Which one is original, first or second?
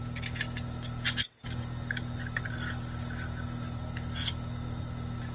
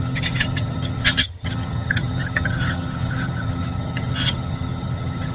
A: first